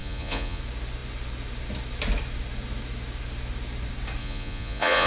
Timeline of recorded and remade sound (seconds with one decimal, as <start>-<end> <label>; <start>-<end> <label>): 0.0-0.6 remade; 0.6-4.2 recorded; 4.2-5.1 remade